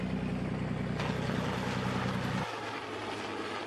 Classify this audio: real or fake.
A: real